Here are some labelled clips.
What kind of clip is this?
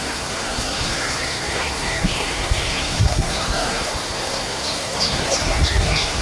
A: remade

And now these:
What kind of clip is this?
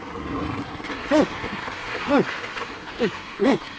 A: remade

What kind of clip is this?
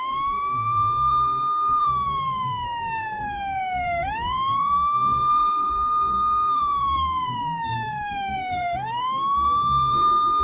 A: remade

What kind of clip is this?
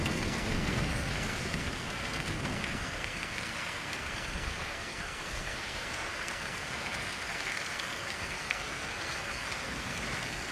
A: remade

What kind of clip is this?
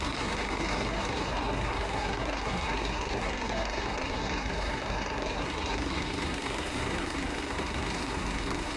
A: remade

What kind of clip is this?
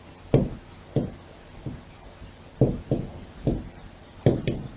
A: recorded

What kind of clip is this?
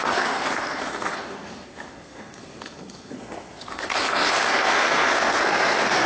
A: remade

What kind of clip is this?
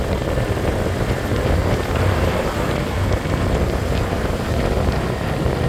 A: recorded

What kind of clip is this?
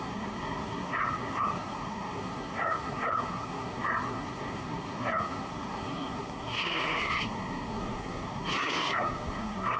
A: remade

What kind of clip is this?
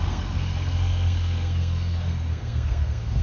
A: remade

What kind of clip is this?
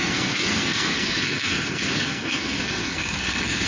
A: remade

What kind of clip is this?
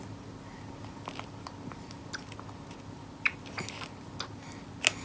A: recorded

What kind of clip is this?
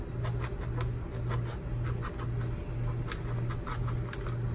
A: recorded